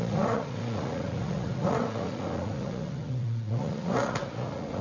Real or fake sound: fake